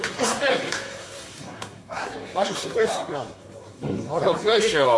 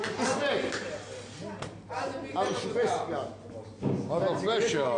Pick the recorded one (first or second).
second